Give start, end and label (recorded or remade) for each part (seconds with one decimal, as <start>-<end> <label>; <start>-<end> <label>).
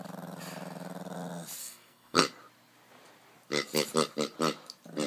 0.0-1.6 recorded; 1.6-2.2 remade; 2.2-5.1 recorded